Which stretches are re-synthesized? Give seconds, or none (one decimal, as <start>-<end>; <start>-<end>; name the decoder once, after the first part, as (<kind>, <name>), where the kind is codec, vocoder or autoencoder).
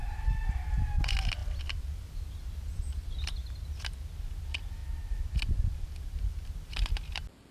3.4-4.1 (vocoder, BigVGAN v2); 4.8-7.5